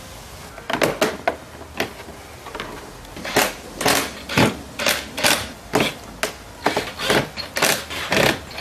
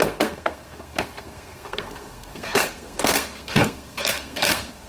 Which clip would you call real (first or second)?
first